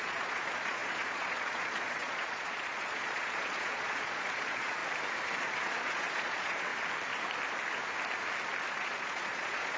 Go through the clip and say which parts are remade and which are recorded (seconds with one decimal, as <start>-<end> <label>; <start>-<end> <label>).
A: 0.0-4.8 remade; 4.8-5.4 recorded; 5.4-6.7 remade; 6.7-8.7 recorded; 8.7-9.8 remade